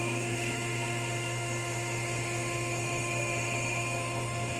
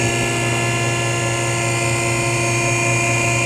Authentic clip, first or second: second